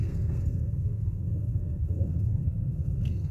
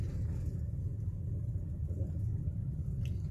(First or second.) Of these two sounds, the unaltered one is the second